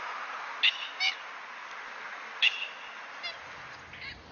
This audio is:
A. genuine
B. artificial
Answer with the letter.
A